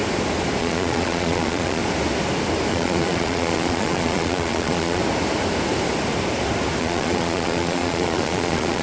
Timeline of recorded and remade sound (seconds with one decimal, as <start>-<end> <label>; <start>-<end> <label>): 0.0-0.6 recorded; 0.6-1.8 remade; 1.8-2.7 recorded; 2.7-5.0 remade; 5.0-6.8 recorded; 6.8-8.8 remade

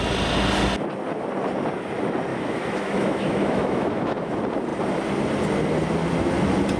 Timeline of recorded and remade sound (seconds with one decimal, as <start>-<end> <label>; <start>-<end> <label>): 0.0-2.3 recorded; 2.3-4.3 remade; 4.3-6.8 recorded

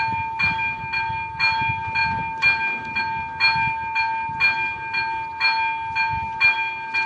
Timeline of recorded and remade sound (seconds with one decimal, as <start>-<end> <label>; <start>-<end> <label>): 0.0-7.1 recorded

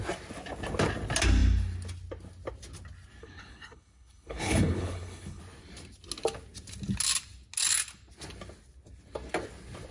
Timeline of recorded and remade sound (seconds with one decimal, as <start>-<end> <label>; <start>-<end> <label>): 0.0-3.2 recorded; 3.2-5.4 remade; 5.4-9.9 recorded

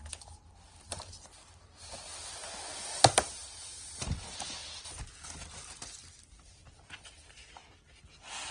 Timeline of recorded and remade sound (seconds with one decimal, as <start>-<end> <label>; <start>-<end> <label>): 0.0-3.4 recorded; 3.4-4.4 remade; 4.4-6.6 recorded; 6.6-7.1 remade; 7.1-8.5 recorded

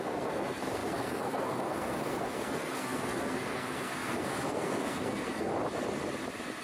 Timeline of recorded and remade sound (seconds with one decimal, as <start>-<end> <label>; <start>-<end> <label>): 0.0-5.5 remade; 5.5-6.6 recorded

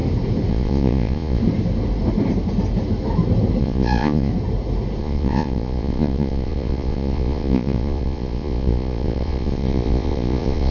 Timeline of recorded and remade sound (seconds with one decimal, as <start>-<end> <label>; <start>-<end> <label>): 0.0-0.5 recorded; 0.5-1.4 remade; 1.4-3.6 recorded; 3.6-4.3 remade; 4.3-5.0 recorded; 5.0-10.7 remade

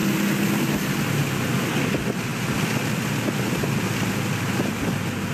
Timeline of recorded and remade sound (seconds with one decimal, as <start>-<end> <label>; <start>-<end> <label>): 0.0-5.3 recorded